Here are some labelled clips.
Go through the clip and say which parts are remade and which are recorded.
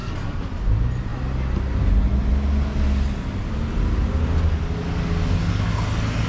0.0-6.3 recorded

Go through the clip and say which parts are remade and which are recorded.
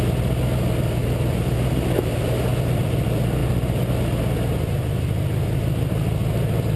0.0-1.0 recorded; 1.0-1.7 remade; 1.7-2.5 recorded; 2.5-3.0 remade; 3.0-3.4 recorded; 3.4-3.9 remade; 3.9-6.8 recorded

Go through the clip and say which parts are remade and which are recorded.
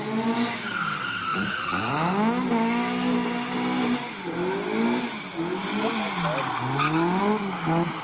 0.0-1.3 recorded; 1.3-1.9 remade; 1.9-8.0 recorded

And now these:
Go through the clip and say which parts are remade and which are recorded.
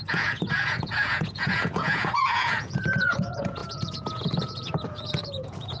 0.0-5.8 remade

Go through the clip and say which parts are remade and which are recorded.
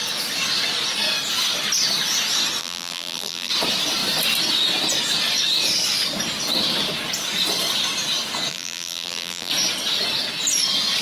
0.0-2.6 recorded; 2.6-3.5 remade; 3.5-8.5 recorded; 8.5-9.5 remade; 9.5-11.0 recorded